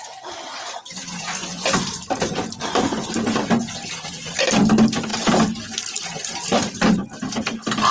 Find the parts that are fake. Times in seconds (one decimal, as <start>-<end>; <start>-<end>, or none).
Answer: none